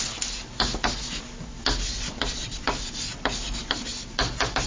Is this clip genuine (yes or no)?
yes